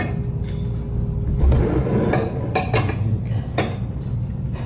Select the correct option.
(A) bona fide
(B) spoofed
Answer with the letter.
A